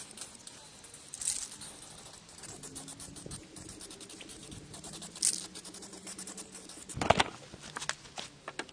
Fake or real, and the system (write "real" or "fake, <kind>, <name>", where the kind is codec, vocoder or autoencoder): real